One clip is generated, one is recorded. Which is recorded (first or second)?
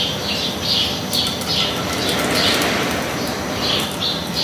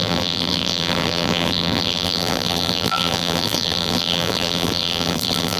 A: first